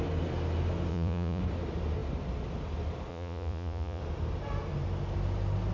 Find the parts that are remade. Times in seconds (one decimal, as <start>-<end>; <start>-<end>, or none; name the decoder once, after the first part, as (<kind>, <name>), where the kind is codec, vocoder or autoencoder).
0.9-1.4 (vocoder, Vocos); 3.1-4.0